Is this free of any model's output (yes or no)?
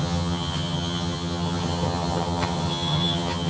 no